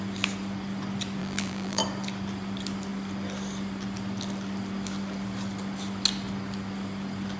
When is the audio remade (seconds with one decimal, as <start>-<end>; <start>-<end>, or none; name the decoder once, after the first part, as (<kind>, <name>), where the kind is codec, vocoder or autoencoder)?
1.2-1.8 (vocoder, BigVGAN v2)